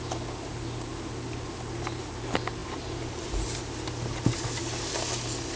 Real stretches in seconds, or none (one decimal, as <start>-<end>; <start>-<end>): 0.0-2.6; 3.6-5.6